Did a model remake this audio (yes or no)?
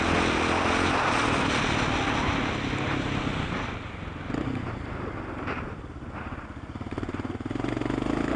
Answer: no